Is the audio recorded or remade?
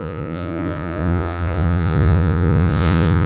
remade